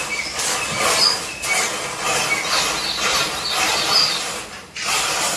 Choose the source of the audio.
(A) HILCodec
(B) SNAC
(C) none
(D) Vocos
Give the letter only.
C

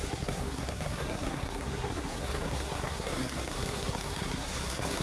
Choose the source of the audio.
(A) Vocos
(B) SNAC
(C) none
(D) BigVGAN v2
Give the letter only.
B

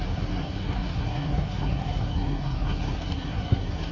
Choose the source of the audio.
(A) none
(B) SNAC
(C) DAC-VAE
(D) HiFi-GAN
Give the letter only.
B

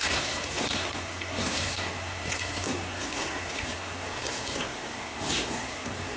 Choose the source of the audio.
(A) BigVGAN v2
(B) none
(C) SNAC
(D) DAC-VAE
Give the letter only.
C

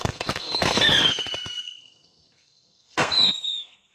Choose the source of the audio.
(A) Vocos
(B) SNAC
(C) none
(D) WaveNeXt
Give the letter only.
B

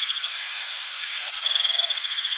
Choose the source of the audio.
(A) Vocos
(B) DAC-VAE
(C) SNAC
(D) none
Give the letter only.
C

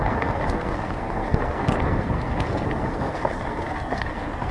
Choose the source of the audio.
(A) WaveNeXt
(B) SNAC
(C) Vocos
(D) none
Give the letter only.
B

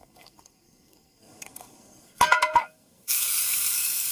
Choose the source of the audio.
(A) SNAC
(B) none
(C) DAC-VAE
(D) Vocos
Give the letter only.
A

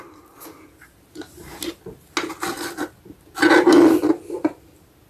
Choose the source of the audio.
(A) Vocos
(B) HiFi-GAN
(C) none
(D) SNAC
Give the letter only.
C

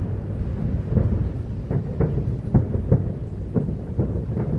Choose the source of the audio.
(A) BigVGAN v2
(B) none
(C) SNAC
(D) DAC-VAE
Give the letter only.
B